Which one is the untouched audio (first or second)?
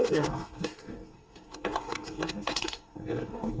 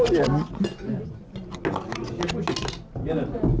second